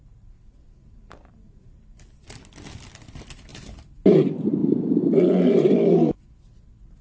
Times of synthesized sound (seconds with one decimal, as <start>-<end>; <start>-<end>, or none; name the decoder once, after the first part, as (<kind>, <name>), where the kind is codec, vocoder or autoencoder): none

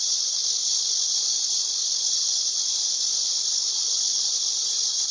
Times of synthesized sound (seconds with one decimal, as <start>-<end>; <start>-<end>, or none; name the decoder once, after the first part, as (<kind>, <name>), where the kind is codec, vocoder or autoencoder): none

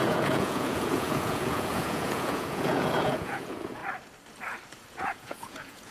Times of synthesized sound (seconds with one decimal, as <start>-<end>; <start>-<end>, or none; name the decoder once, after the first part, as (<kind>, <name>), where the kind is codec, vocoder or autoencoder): 0.0-3.8 (vocoder, Vocos); 4.9-5.9

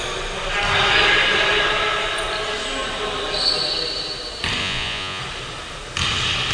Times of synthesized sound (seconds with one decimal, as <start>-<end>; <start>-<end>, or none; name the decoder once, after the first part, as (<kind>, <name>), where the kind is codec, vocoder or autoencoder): 4.6-5.2 (vocoder, Vocos)

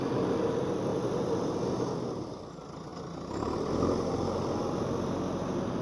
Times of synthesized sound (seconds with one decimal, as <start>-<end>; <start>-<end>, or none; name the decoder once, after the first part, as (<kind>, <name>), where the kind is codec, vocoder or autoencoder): none

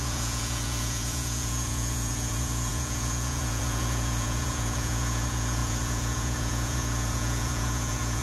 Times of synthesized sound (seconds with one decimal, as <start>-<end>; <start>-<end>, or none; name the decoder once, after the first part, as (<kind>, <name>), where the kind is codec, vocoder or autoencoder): 0.0-8.2 (vocoder, Vocos)

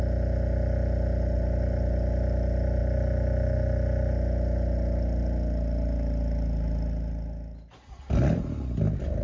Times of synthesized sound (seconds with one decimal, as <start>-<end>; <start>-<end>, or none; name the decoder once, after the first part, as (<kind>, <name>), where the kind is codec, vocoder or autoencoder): none